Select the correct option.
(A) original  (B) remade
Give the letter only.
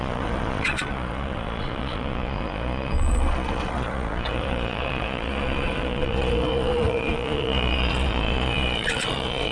B